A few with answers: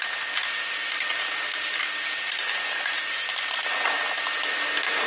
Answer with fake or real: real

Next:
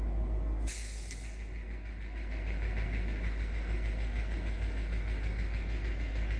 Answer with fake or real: fake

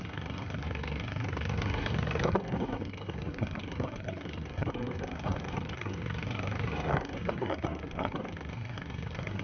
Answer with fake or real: fake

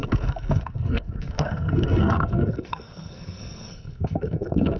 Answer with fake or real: fake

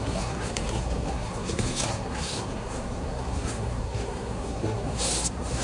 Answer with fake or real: fake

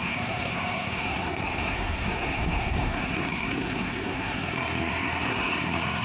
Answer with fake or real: fake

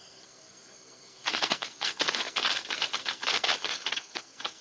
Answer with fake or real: fake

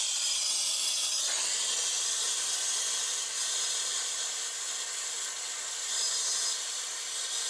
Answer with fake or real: real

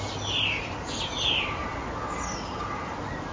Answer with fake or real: real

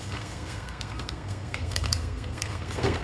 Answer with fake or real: fake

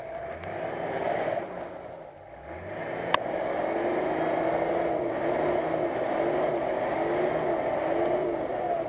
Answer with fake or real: real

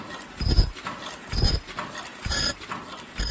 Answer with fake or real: real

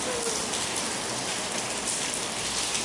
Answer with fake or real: real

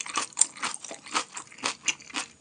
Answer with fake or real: real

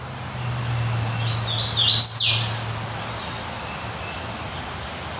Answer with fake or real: real